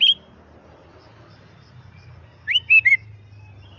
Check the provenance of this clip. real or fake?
real